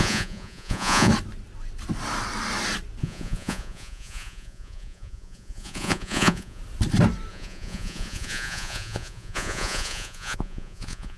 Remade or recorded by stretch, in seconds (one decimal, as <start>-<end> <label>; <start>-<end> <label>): 0.0-1.1 remade; 1.1-3.0 recorded; 3.0-6.6 remade; 6.6-7.3 recorded; 7.3-11.2 remade